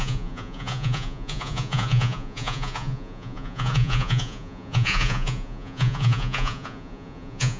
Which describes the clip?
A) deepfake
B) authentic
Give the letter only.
A